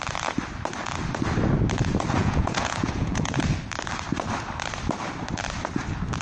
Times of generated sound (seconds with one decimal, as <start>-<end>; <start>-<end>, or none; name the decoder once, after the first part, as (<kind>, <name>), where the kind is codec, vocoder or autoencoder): 2.2-3.4 (vocoder, Vocos)